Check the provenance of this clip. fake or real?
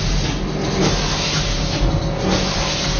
real